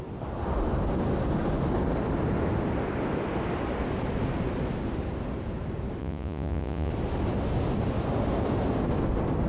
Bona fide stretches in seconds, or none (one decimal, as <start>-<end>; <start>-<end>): 0.0-6.0; 6.9-9.5